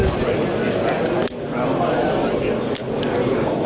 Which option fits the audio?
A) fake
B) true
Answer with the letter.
B